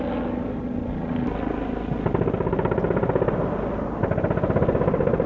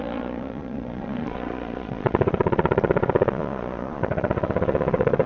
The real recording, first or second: first